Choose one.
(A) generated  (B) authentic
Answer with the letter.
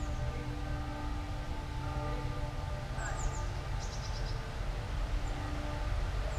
B